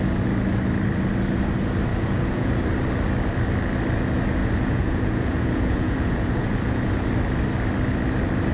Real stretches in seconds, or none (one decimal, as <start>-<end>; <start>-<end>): 0.0-1.9; 2.5-4.4; 7.0-8.5